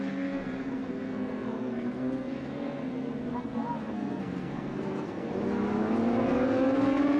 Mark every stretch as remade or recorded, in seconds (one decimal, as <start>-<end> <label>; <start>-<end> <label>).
0.0-5.3 remade; 5.3-6.1 recorded; 6.1-7.2 remade